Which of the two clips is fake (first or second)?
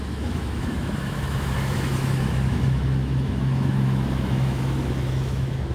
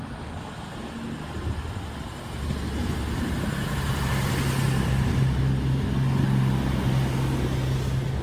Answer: first